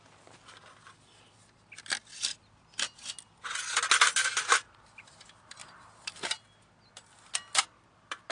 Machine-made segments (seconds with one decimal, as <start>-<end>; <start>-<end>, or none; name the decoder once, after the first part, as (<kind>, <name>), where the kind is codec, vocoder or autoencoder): 2.3-3.1 (vocoder, BigVGAN v2); 5.6-6.3